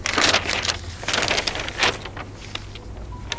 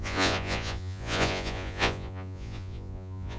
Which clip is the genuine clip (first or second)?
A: first